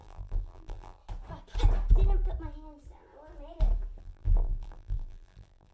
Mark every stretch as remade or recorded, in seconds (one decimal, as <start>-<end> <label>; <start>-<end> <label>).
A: 0.0-1.0 remade; 1.0-4.0 recorded; 4.0-5.7 remade